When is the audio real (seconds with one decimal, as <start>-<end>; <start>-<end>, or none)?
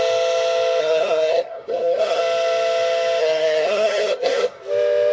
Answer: 0.0-0.8; 2.2-3.2; 4.6-5.1